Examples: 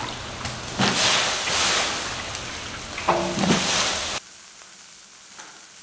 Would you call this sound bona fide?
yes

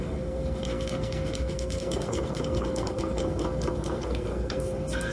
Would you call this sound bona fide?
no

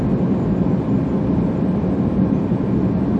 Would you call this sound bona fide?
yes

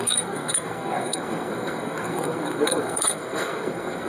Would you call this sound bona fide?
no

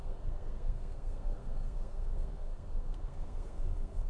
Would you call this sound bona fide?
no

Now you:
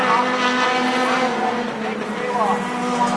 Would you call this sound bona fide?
yes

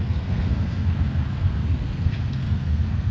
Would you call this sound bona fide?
no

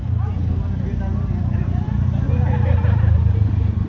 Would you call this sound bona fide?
yes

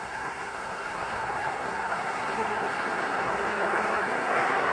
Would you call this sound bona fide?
no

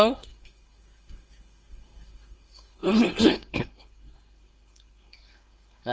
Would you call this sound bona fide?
no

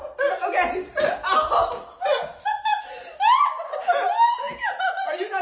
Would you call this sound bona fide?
yes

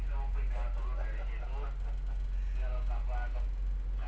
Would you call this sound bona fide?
yes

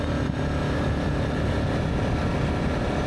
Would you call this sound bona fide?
yes